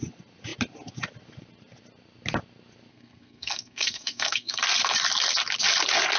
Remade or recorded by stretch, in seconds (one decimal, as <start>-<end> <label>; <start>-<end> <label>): 0.0-2.9 recorded; 2.9-4.6 remade; 4.6-6.2 recorded